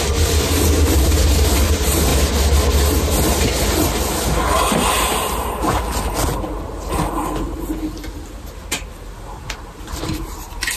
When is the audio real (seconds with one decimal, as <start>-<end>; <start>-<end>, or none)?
0.0-10.8